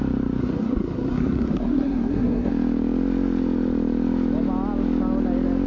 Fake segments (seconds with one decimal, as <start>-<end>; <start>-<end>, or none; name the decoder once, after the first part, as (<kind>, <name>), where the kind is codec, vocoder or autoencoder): 0.4-2.5 (codec, SNAC)